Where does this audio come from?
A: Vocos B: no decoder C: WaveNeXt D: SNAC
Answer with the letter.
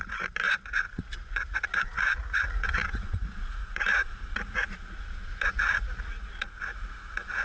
A